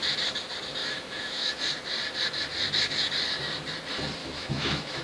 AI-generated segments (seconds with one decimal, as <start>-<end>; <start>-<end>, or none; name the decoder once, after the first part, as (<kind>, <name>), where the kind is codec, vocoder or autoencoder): 0.8-1.5 (autoencoder, DAC-VAE); 4.2-5.0